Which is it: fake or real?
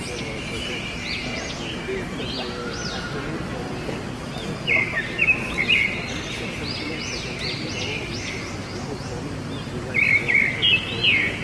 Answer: real